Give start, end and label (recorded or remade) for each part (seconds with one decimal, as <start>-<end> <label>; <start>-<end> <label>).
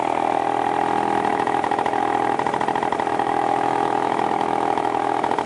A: 0.0-1.3 recorded; 1.3-2.0 remade; 2.0-3.1 recorded; 3.1-5.5 remade